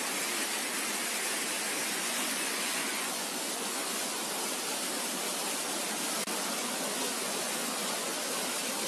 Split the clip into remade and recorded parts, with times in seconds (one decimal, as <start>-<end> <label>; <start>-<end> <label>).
0.0-1.8 recorded; 1.8-4.2 remade; 4.2-6.6 recorded; 6.6-8.3 remade; 8.3-8.9 recorded